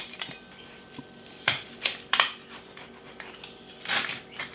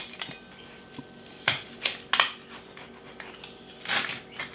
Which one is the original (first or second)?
second